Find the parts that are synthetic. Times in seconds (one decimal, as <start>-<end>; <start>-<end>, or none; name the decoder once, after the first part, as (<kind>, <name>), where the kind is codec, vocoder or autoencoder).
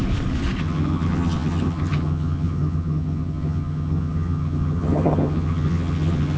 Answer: 0.6-6.4 (vocoder, HiFi-GAN)